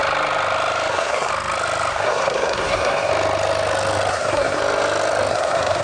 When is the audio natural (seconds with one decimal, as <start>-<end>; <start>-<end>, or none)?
0.0-0.9; 1.3-1.9; 3.1-4.1; 4.6-5.3